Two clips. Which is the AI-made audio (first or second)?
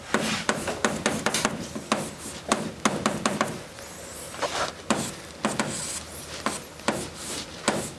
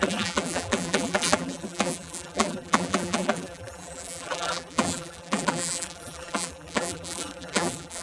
second